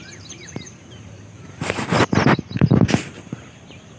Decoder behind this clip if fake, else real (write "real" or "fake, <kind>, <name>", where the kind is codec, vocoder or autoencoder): fake, vocoder, BigVGAN v2